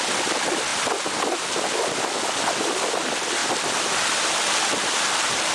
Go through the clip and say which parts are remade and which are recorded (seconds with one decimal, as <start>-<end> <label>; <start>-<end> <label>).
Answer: 0.0-3.4 recorded; 3.4-4.5 remade; 4.5-5.5 recorded